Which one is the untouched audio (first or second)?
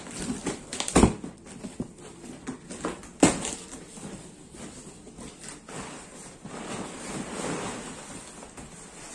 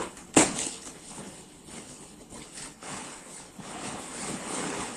first